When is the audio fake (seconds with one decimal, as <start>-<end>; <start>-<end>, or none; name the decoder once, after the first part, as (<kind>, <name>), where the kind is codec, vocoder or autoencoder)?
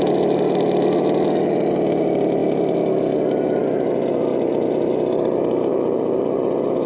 none